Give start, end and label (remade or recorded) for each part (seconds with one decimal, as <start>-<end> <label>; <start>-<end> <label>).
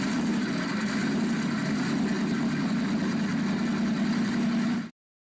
0.0-5.2 recorded